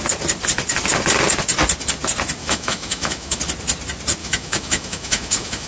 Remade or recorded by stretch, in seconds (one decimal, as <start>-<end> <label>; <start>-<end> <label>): 0.0-2.4 recorded; 2.4-3.4 remade; 3.4-4.2 recorded; 4.2-5.7 remade